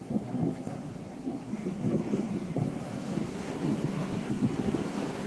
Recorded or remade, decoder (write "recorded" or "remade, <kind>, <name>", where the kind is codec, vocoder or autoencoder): remade, codec, SNAC